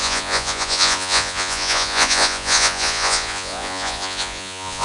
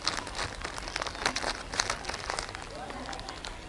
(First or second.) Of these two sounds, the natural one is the second